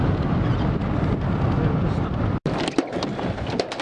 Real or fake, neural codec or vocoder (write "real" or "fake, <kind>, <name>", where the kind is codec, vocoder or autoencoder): real